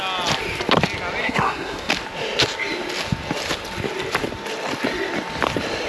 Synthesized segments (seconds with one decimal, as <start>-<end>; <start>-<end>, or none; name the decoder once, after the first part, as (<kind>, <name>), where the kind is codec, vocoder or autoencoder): 1.2-1.9 (codec, SNAC)